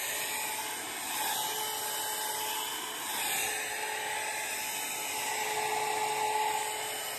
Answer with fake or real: real